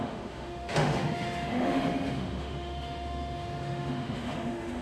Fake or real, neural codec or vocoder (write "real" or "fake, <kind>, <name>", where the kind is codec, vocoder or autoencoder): fake, autoencoder, DAC-VAE